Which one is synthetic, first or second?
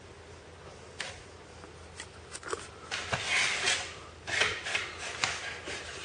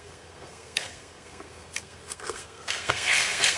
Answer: second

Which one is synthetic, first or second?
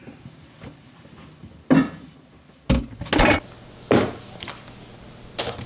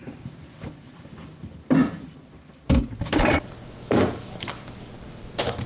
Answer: second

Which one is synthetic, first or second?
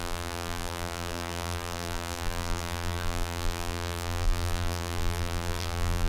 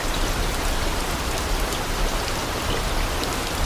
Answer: first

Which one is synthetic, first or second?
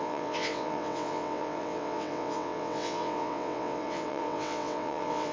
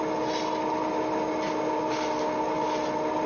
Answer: first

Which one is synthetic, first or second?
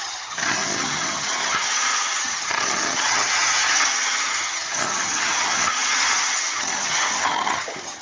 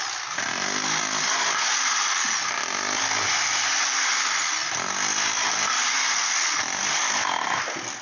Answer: first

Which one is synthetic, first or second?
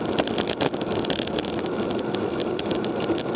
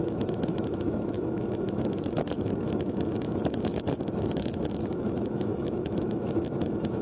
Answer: second